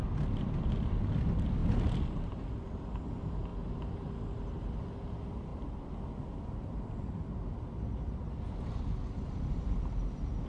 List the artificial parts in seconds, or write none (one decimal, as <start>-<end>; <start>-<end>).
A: none

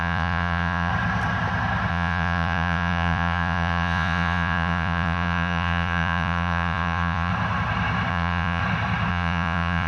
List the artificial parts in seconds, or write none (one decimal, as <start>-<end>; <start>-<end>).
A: 0.0-0.9; 1.9-7.3; 8.1-8.6; 9.1-9.9

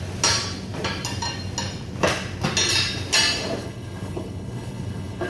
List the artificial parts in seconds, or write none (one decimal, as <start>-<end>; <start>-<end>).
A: 3.6-5.3

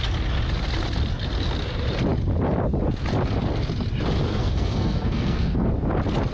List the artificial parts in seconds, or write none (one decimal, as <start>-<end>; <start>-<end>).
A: 4.3-5.7

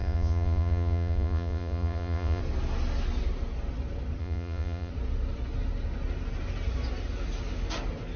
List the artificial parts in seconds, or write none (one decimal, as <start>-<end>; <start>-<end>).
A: 0.0-2.4; 4.2-4.9

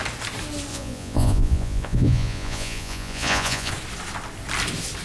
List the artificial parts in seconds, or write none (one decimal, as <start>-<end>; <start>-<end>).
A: 0.7-3.7